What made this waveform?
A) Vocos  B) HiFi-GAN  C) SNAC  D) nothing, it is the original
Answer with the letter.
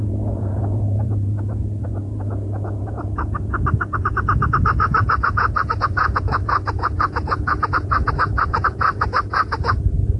A